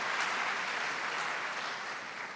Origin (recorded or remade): recorded